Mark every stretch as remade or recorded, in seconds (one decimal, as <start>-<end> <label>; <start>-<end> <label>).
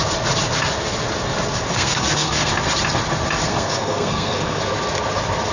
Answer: 0.0-1.7 recorded; 1.7-2.5 remade; 2.5-3.5 recorded; 3.5-4.6 remade; 4.6-5.5 recorded